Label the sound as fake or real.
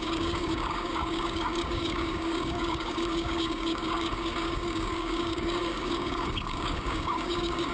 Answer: fake